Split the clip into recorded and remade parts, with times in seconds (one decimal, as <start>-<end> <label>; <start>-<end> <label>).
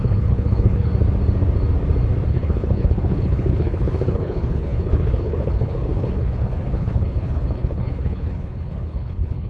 0.0-0.9 remade; 0.9-2.3 recorded; 2.3-9.5 remade